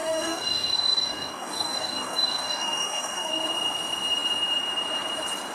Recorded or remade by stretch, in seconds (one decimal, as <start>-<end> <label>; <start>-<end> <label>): 0.0-3.3 remade; 3.3-5.5 recorded